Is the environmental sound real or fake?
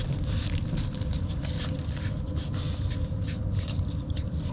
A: real